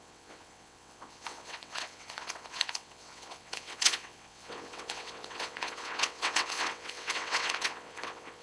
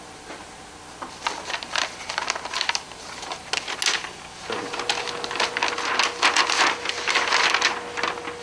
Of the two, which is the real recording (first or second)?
second